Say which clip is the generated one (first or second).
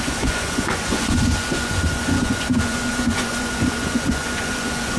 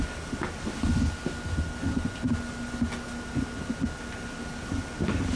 first